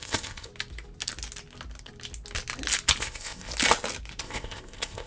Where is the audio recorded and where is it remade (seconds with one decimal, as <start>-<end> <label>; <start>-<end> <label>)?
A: 0.0-0.5 remade; 0.5-3.0 recorded; 3.0-3.5 remade; 3.5-4.2 recorded; 4.2-5.1 remade